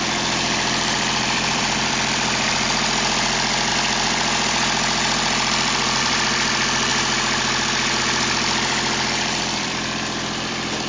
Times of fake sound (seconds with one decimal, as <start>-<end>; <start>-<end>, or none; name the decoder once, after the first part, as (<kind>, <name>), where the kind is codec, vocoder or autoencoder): 0.0-3.7 (vocoder, BigVGAN v2); 6.0-6.9; 8.0-10.9

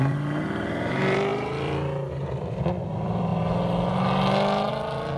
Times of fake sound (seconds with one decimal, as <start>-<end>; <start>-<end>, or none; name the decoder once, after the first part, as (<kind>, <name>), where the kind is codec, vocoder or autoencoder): 0.0-3.3 (vocoder, BigVGAN v2); 4.7-5.2

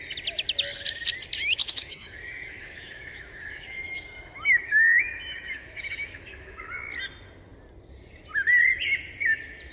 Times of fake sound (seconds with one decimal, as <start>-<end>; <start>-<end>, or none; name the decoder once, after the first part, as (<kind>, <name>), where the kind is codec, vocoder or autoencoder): 1.6-6.6 (autoencoder, DAC-VAE)

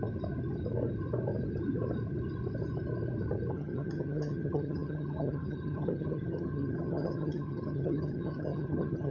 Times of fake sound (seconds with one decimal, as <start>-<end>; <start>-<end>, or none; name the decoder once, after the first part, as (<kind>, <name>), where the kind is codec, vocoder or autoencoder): 3.5-9.1 (vocoder, HiFi-GAN)

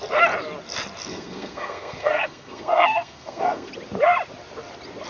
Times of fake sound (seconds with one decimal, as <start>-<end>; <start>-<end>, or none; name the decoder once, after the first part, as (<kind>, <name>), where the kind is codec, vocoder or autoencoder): 1.1-3.7 (codec, SNAC)

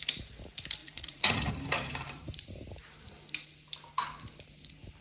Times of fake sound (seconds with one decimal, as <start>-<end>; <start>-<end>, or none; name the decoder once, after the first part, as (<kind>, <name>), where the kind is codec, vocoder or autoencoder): 0.8-1.5 (vocoder, Vocos)

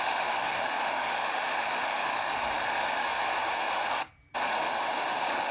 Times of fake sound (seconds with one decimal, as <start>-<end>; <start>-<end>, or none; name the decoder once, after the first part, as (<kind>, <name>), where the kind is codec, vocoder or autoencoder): 0.0-3.1 (autoencoder, DAC-VAE); 4.8-5.5

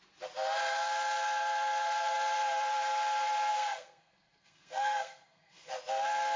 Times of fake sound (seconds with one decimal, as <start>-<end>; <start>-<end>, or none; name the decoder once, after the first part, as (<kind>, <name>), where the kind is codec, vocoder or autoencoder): 3.5-5.7 (codec, SNAC)